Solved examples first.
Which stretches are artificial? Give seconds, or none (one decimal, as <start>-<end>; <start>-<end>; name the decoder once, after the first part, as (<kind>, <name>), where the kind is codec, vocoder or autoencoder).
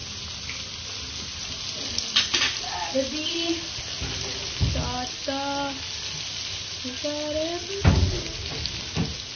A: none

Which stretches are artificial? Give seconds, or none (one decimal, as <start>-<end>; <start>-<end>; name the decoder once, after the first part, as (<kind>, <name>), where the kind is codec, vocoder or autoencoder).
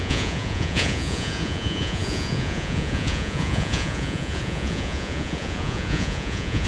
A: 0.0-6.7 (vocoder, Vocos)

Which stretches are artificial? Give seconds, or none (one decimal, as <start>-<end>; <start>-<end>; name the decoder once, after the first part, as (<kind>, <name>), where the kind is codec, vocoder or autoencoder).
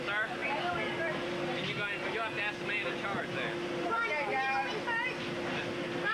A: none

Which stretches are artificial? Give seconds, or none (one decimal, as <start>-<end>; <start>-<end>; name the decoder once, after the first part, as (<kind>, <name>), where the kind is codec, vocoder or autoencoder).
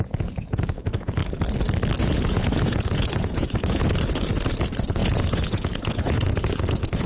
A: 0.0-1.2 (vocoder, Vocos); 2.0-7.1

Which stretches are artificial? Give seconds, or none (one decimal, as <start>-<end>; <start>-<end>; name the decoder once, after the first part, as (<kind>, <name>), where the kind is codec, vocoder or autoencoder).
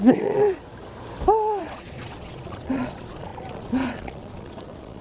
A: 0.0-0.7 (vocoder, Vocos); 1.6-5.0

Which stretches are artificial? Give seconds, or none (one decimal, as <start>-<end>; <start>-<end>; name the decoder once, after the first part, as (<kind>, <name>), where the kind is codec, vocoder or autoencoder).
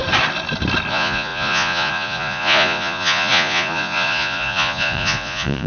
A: 0.9-5.7 (vocoder, Vocos)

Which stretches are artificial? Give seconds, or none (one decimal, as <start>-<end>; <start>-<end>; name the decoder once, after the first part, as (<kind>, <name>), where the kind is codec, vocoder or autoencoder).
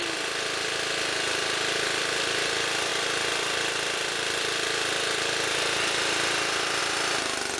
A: none